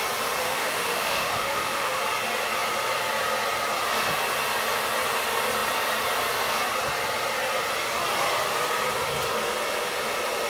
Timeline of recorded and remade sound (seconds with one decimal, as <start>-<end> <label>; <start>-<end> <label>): 0.0-0.4 recorded; 0.4-2.0 remade; 2.0-10.5 recorded